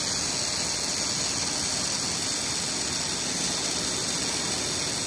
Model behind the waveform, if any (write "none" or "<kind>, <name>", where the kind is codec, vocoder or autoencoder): none